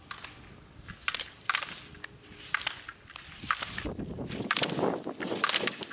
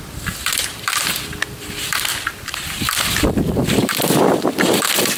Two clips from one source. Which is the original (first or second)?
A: first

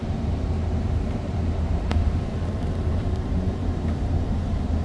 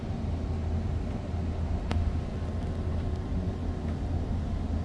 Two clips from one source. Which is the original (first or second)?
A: second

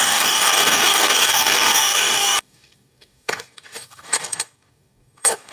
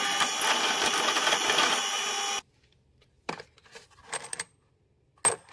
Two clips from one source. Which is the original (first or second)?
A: second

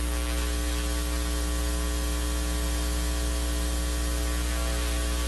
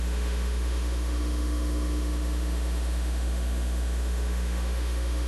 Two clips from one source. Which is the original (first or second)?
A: first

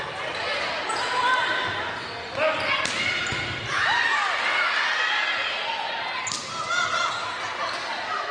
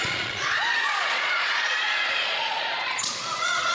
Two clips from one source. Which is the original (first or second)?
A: first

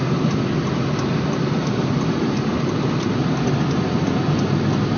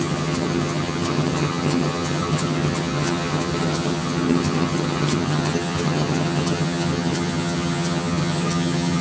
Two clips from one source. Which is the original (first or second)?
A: first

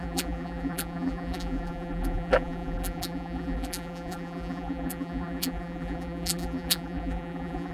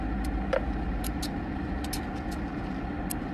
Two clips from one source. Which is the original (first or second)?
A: second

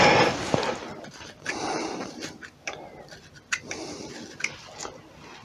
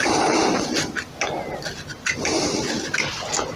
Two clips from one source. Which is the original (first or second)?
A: second